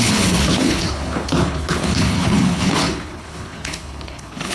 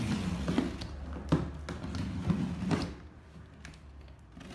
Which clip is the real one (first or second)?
second